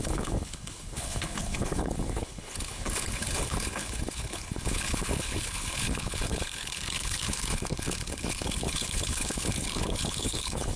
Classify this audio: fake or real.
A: fake